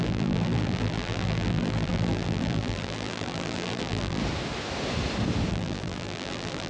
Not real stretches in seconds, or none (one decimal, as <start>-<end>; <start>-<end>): 0.0-4.2; 5.5-6.7